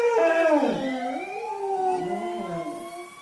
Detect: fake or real real